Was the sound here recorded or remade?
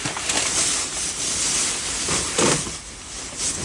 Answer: recorded